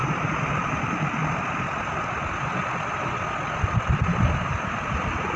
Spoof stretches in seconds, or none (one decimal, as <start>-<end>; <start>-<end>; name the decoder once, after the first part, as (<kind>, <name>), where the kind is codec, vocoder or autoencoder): 0.0-1.2 (vocoder, BigVGAN v2); 3.9-5.4